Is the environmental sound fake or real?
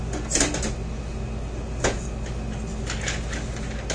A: real